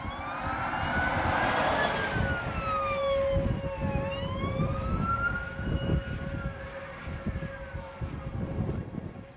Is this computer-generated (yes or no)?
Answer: no